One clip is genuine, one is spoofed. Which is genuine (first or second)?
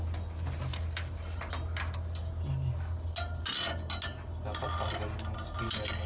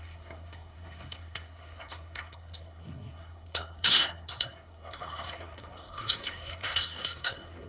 first